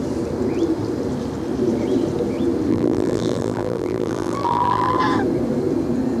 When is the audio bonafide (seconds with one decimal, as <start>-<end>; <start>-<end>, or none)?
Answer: 0.0-2.7; 5.0-6.2